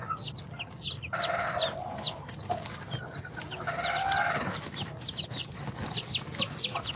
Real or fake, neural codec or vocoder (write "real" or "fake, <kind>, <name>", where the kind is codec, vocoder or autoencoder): real